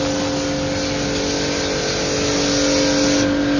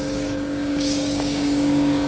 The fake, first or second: second